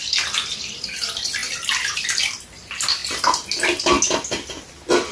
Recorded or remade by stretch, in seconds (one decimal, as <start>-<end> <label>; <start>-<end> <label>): 0.0-1.4 recorded; 1.4-2.0 remade; 2.0-5.1 recorded